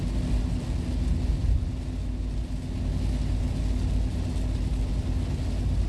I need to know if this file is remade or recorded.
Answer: recorded